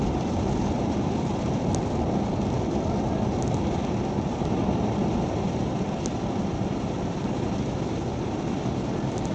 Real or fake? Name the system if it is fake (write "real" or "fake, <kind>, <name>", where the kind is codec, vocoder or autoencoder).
fake, vocoder, BigVGAN v2